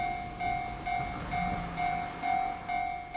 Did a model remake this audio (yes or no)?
no